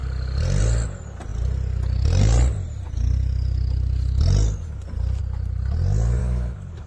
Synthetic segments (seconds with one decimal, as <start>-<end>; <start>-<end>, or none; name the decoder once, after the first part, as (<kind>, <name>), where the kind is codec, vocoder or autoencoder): 6.2-6.9 (codec, DAC)